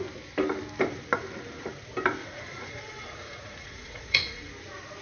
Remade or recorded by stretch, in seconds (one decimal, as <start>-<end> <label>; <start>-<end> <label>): 0.0-2.2 recorded; 2.2-4.5 remade; 4.5-5.0 recorded